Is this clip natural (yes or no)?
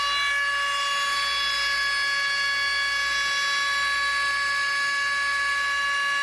yes